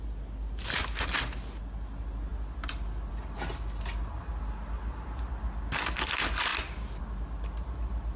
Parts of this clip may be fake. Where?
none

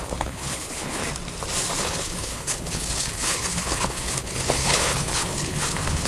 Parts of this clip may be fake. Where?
0.0-1.0 (codec, HILCodec); 1.8-6.1

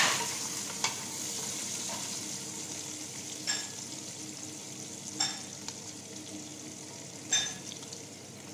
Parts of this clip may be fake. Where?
none